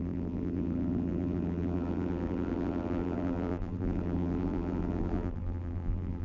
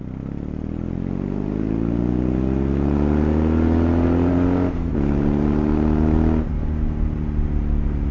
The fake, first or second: first